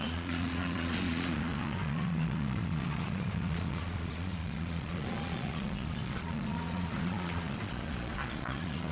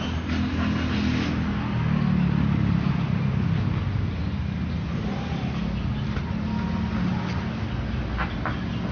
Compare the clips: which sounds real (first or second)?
second